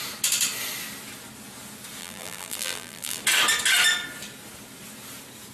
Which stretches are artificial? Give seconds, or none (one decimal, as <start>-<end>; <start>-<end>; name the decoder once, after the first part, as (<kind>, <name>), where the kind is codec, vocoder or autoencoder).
2.0-3.2 (vocoder, BigVGAN v2)